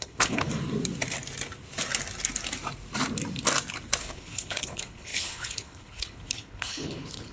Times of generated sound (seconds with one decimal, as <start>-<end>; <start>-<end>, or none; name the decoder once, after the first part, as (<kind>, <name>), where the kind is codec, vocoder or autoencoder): 0.0-0.5 (codec, HILCodec); 4.0-7.3